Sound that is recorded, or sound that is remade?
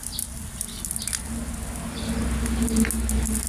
recorded